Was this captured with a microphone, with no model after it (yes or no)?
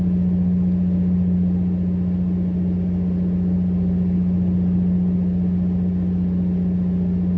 yes